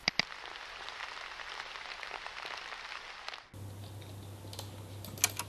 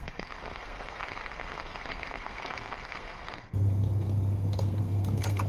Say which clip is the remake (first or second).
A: second